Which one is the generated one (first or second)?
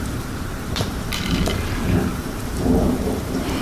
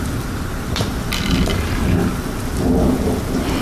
first